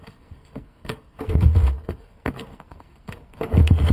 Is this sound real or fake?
fake